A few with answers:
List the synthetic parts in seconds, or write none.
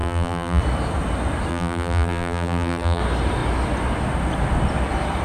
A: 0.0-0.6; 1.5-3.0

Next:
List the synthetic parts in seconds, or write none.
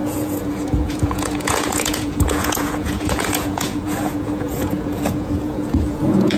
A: 0.0-6.4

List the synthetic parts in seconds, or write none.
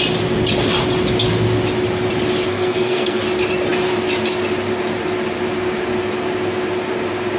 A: 2.5-3.2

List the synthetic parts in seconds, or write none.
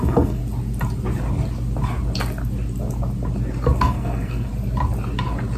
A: 0.0-0.4; 3.8-4.5